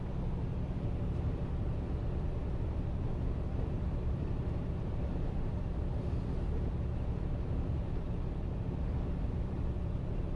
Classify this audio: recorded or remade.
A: remade